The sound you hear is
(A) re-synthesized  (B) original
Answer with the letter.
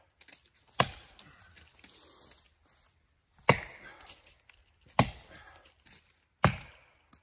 B